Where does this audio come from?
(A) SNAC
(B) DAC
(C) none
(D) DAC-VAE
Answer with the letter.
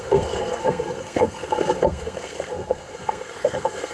A